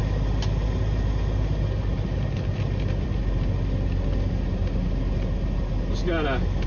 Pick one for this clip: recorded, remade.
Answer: recorded